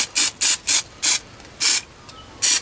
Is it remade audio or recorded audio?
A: recorded